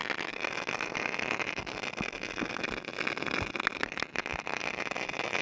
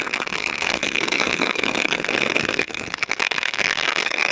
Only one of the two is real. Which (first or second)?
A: first